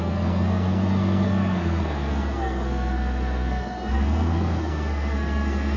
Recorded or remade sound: remade